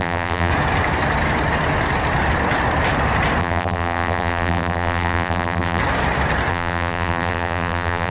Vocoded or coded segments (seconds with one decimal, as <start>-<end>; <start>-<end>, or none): 0.0-0.5; 3.4-5.8; 6.5-8.1